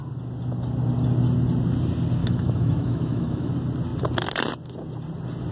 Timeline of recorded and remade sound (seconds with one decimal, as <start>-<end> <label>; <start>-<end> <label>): 0.0-2.2 recorded; 2.2-3.5 remade; 3.5-5.5 recorded